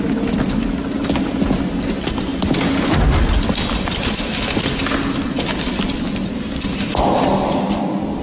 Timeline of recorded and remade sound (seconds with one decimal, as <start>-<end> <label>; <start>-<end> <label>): 0.0-8.2 recorded